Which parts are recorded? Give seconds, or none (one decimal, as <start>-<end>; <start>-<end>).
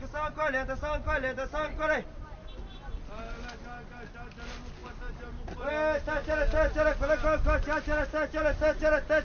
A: 0.0-4.8; 5.7-9.2